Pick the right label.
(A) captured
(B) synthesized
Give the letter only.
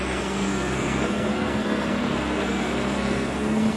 B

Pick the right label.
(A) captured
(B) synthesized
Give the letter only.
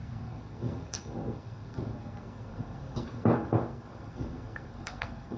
B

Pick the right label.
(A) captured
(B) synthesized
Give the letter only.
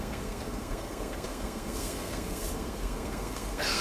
B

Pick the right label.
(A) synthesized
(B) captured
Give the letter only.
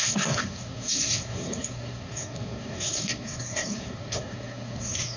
A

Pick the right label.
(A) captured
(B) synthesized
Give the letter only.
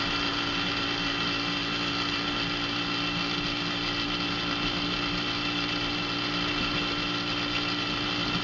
A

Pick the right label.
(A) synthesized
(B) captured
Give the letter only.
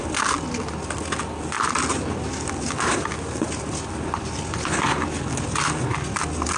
B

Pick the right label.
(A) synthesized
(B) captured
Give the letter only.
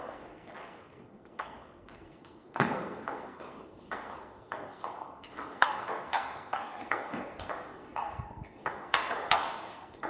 A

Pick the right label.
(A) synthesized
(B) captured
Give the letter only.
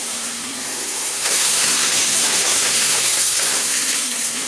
A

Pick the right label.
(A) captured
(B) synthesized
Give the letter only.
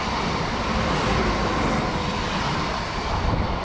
A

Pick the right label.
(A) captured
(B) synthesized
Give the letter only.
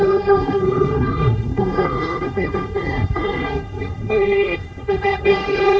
B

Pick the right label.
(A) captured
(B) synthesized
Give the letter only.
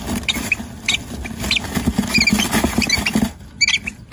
A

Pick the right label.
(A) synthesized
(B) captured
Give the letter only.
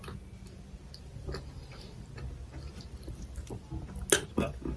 B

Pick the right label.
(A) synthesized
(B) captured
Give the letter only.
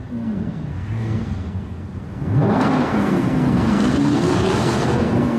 A